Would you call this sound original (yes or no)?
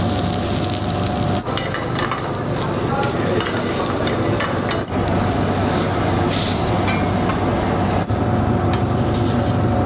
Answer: yes